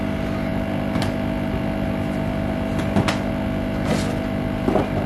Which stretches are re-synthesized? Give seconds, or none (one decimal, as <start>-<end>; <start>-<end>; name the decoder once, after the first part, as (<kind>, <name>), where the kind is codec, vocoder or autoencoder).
none